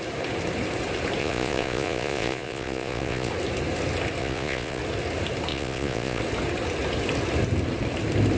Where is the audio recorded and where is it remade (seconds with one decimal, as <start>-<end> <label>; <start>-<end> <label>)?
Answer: 0.0-1.2 recorded; 1.2-3.3 remade; 3.3-4.2 recorded; 4.2-4.8 remade; 4.8-5.5 recorded; 5.5-6.2 remade; 6.2-8.4 recorded